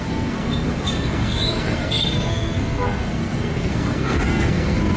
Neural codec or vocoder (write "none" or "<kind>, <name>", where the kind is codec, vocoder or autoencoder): codec, SNAC